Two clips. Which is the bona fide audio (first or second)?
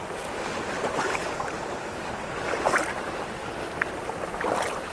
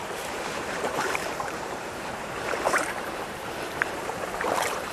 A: first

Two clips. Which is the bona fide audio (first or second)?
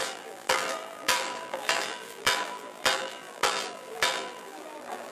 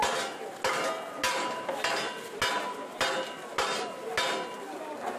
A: second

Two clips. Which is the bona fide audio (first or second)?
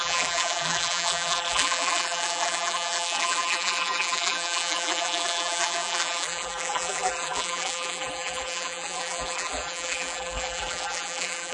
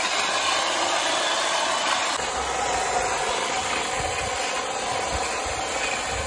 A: second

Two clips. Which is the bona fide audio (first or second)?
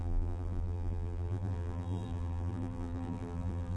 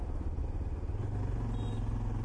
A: second